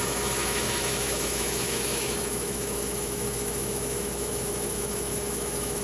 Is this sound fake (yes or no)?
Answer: yes